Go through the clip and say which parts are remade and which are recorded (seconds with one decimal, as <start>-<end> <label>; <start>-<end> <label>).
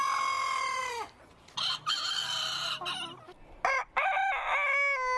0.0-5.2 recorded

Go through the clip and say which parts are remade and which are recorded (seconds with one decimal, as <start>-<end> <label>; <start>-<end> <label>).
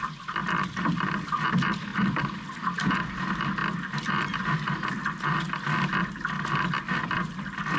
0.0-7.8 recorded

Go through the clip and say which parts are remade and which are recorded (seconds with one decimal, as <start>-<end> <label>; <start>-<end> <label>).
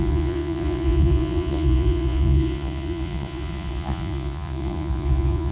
0.0-5.5 remade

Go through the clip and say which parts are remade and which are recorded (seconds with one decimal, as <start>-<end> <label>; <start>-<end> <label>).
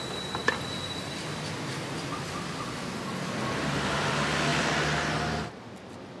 0.0-6.2 recorded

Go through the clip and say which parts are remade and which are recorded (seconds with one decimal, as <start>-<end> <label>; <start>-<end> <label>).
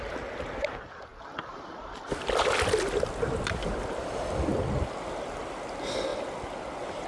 0.0-7.1 recorded